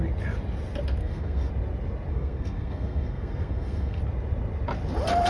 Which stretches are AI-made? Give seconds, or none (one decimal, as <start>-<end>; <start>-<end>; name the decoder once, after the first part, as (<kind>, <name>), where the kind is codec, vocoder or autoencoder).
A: 1.0-1.5 (codec, SNAC); 2.1-4.0